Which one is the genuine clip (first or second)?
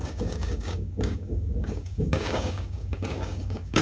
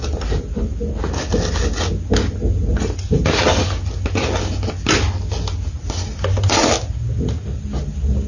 second